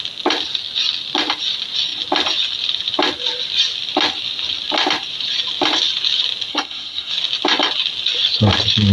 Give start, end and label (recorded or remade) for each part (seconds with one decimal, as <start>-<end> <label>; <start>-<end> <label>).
0.0-6.5 recorded; 6.5-7.1 remade; 7.1-8.9 recorded